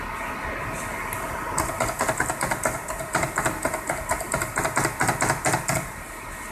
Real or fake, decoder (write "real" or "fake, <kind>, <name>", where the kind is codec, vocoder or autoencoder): real